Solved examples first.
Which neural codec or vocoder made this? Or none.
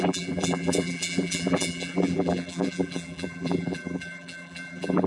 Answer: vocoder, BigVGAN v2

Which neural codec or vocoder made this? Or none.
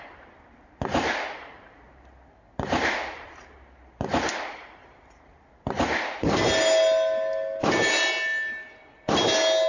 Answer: none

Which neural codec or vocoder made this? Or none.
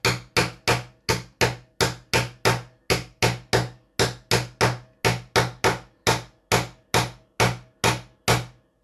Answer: none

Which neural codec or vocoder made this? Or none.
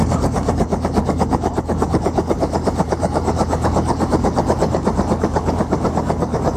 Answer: codec, DAC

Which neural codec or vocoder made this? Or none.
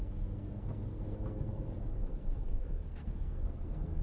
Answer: codec, SNAC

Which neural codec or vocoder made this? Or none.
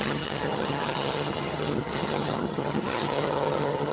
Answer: vocoder, HiFi-GAN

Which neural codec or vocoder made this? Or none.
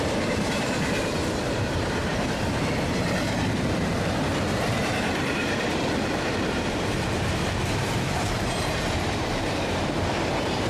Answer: vocoder, BigVGAN v2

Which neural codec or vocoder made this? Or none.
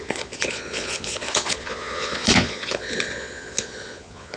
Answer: vocoder, Vocos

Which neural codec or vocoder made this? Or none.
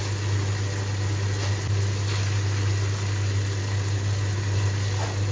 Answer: none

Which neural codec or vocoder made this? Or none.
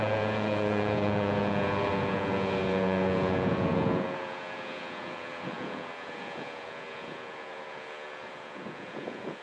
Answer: vocoder, Vocos